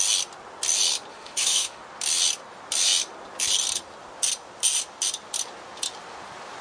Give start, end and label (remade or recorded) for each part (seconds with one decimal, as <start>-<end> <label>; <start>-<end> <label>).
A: 0.0-1.1 recorded; 1.1-1.8 remade; 1.8-6.6 recorded